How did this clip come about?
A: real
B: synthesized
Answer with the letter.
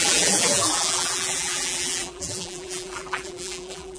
B